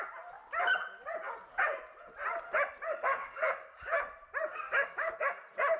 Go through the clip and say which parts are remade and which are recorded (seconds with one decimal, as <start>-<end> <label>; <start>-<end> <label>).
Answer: 0.0-3.1 recorded; 3.1-4.0 remade; 4.0-4.5 recorded; 4.5-5.1 remade; 5.1-5.8 recorded